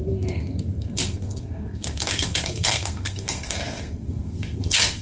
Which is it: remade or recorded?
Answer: remade